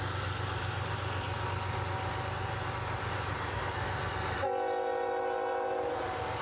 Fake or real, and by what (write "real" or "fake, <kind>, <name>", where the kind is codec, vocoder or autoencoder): real